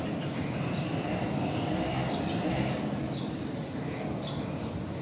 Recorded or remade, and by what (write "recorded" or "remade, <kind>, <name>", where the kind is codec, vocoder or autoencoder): recorded